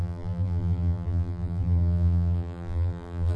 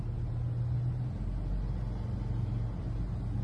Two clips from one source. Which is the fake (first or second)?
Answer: first